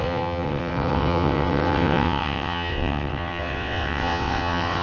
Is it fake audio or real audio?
fake